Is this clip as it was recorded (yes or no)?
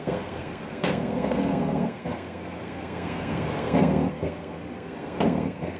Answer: no